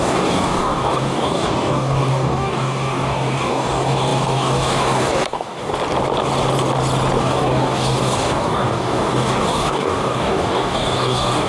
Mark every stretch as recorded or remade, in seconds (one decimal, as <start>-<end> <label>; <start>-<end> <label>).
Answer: 0.0-5.7 remade; 5.7-7.2 recorded; 7.2-11.5 remade